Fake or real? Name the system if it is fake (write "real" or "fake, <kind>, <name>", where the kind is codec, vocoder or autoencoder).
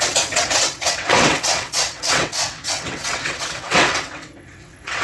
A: fake, vocoder, WaveNeXt